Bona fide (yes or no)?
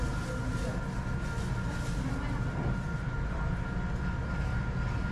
yes